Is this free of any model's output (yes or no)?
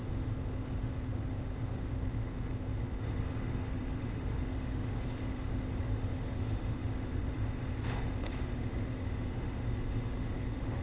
no